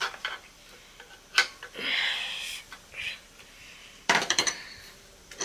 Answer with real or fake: fake